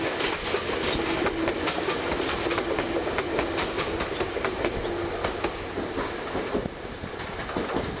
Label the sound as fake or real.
real